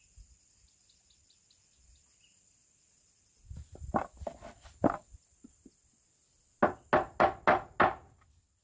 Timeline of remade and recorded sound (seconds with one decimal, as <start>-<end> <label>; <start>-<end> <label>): 0.0-8.6 recorded